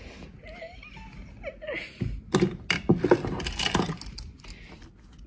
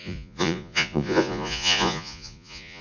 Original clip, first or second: first